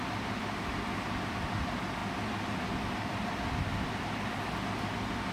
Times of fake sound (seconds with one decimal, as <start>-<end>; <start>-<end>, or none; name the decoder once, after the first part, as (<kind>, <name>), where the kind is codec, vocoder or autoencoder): none